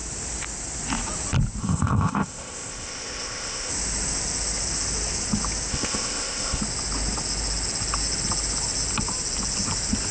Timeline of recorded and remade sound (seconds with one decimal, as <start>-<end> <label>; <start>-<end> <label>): 0.0-1.6 recorded; 1.6-3.7 remade; 3.7-5.7 recorded; 5.7-6.6 remade; 6.6-10.1 recorded

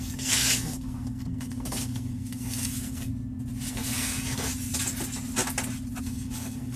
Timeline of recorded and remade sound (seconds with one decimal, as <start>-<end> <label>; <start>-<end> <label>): 0.0-3.1 remade; 3.1-3.7 recorded; 3.7-4.5 remade; 4.5-6.0 recorded; 6.0-6.8 remade

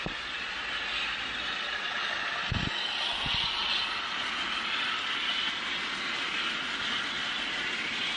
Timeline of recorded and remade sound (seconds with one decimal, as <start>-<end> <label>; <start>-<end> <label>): 0.0-8.2 recorded

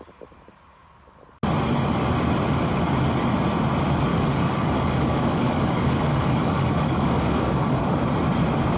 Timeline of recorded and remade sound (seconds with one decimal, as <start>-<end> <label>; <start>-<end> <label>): 0.0-4.1 recorded; 4.1-7.8 remade; 7.8-8.8 recorded

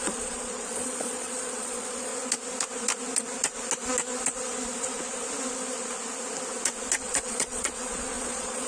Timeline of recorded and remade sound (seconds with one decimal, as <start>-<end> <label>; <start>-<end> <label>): 0.0-2.1 remade; 2.1-7.0 recorded; 7.0-8.7 remade

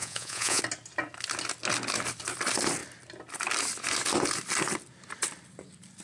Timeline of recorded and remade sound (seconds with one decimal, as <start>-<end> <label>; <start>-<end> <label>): 0.0-0.6 remade; 0.6-6.0 recorded